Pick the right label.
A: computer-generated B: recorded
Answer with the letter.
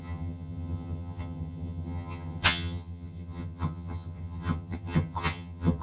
A